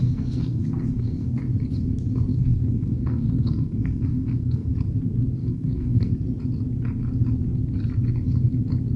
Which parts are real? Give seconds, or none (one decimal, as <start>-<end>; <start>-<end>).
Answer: 1.4-2.3; 4.7-5.4; 6.1-9.0